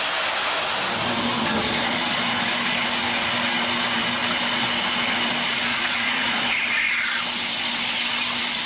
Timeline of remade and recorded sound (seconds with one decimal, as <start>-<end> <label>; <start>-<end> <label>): 0.0-1.6 recorded; 1.6-2.2 remade; 2.2-5.7 recorded; 5.7-6.5 remade; 6.5-8.7 recorded